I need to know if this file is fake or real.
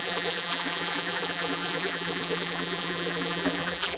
fake